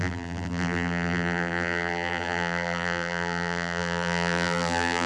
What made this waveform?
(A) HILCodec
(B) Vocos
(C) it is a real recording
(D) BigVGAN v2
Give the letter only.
D